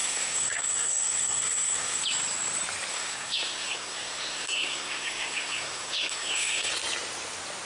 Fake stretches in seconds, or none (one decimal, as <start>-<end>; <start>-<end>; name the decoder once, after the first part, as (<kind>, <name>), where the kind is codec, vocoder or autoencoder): 0.0-2.0 (codec, SNAC); 2.9-6.7